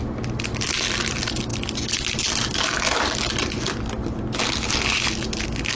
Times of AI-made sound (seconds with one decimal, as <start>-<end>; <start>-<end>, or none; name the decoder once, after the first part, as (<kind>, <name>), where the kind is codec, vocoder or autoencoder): none